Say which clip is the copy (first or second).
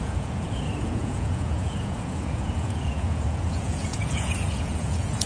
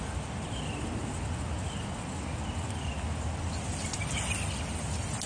first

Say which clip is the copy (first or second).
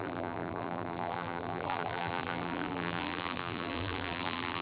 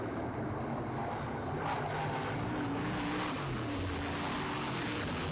first